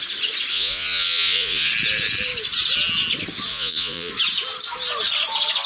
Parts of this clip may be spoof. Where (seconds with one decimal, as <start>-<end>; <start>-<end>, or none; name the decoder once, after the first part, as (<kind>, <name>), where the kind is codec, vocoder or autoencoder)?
0.5-1.7 (vocoder, Vocos); 3.5-4.1